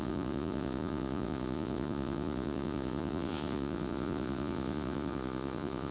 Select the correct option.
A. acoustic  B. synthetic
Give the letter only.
B